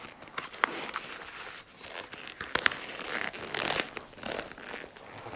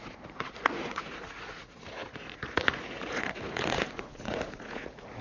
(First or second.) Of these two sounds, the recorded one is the first